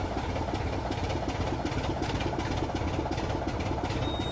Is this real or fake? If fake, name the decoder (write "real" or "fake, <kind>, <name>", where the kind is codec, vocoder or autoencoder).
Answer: real